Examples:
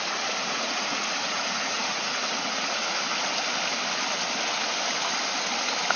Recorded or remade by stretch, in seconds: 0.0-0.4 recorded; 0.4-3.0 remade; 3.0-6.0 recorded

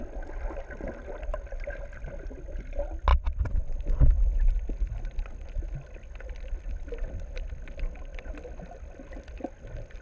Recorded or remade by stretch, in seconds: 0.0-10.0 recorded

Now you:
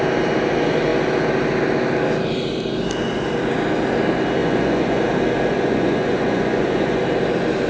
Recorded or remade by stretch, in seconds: 0.0-4.4 recorded; 4.4-5.0 remade; 5.0-5.5 recorded; 5.5-7.0 remade; 7.0-7.7 recorded

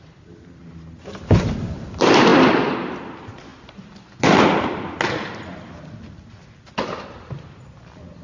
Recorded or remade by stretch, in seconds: 0.0-8.2 recorded

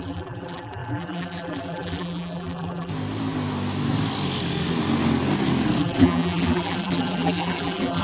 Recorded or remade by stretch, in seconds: 0.0-2.9 remade; 2.9-5.8 recorded; 5.8-8.0 remade

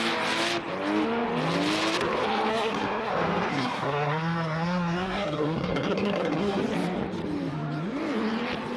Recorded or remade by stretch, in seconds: 0.0-2.5 recorded; 2.5-3.1 remade; 3.1-3.5 recorded; 3.5-6.6 remade; 6.6-8.8 recorded

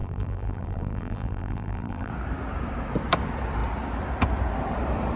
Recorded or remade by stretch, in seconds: 0.0-2.1 remade; 2.1-5.2 recorded